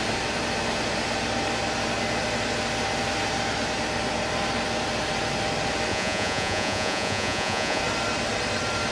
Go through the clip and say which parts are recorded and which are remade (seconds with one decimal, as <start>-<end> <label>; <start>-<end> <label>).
0.0-5.9 recorded; 5.9-7.8 remade; 7.8-8.9 recorded

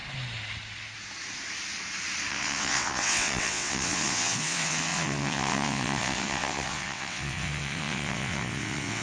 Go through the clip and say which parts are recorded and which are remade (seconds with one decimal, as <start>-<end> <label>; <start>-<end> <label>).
0.0-2.3 recorded; 2.3-9.0 remade

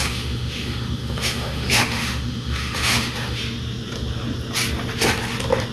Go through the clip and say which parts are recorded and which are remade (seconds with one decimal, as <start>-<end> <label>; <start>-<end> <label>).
0.0-3.4 remade; 3.4-5.7 recorded

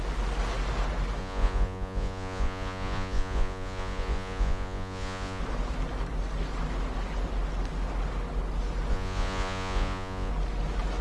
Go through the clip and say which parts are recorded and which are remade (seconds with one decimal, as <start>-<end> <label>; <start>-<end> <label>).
0.0-1.2 recorded; 1.2-5.4 remade; 5.4-8.9 recorded; 8.9-10.3 remade; 10.3-11.0 recorded

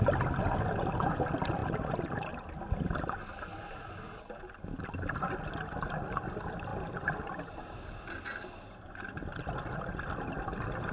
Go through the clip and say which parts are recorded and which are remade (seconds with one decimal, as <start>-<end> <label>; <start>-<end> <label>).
0.0-10.9 recorded

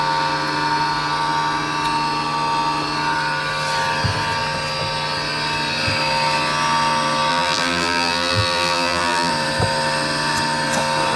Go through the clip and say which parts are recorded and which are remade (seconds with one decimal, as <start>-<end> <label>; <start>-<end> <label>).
0.0-7.3 recorded; 7.3-9.3 remade; 9.3-11.2 recorded

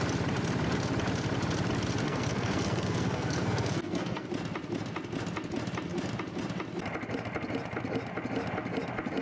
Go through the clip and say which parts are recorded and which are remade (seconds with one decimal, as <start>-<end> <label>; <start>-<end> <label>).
0.0-2.0 recorded; 2.0-4.3 remade; 4.3-9.2 recorded